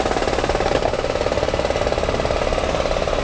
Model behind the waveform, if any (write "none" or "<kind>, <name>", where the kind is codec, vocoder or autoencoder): none